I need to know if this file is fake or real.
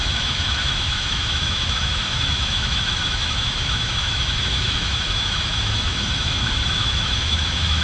fake